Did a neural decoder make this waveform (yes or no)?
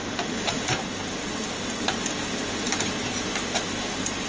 yes